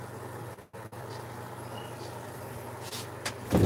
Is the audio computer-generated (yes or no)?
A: no